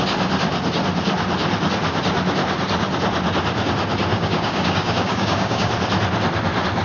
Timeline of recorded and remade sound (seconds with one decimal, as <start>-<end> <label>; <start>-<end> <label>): 0.0-4.1 recorded; 4.1-5.7 remade; 5.7-6.8 recorded

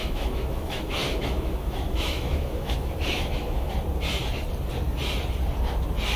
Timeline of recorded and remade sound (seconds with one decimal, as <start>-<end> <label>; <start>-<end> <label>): 0.0-3.7 remade; 3.7-6.2 recorded

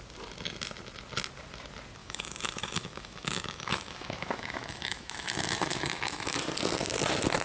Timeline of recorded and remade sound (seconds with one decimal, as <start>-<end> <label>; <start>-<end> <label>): 0.0-2.0 recorded; 2.0-6.4 remade; 6.4-7.4 recorded

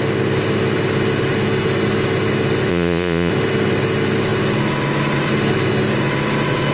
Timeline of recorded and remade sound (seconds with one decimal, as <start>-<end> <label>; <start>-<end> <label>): 0.0-2.7 recorded; 2.7-3.3 remade; 3.3-6.7 recorded

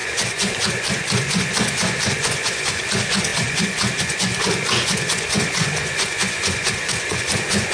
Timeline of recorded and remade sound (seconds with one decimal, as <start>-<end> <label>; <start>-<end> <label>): 0.0-7.7 remade

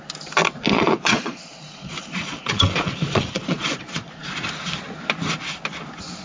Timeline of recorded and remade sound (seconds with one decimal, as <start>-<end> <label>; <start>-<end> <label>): 0.0-0.7 recorded; 0.7-4.3 remade; 4.3-6.2 recorded

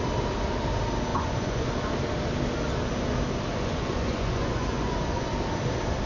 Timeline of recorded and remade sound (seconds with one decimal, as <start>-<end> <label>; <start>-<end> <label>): 0.0-1.1 recorded; 1.1-1.7 remade; 1.7-3.5 recorded; 3.5-5.3 remade; 5.3-6.1 recorded